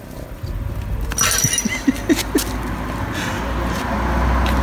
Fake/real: real